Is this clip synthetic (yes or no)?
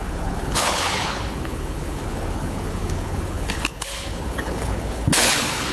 yes